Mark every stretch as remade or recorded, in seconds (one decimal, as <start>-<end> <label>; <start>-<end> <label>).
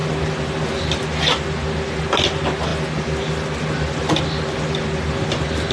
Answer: 0.0-5.7 recorded